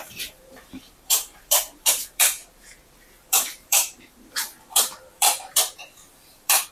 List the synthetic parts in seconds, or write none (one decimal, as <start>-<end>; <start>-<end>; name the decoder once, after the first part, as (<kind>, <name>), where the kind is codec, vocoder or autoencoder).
0.0-6.7 (vocoder, BigVGAN v2)